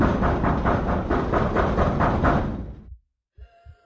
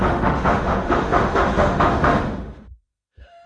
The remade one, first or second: second